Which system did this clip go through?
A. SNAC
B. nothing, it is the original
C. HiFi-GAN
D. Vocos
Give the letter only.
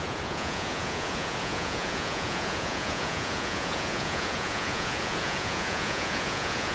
D